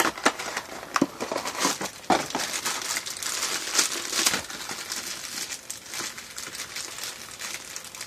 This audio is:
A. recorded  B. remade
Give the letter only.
A